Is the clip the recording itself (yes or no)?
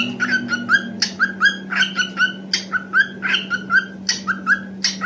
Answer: yes